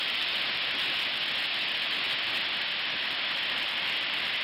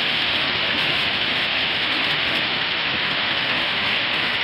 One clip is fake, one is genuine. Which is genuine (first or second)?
first